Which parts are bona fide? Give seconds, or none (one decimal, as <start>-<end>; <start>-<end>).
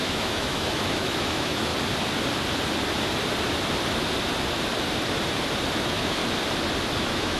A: 1.7-5.7; 6.2-7.0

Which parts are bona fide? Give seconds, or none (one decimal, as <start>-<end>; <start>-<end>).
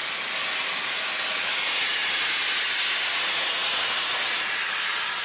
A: 1.8-5.2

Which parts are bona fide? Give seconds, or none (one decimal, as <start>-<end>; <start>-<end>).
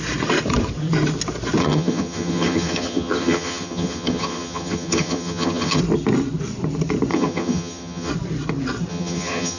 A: 0.0-1.6; 5.8-7.1; 8.1-8.9